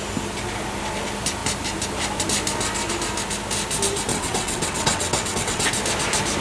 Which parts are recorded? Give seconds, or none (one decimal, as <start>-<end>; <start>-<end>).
0.0-4.1; 5.7-6.4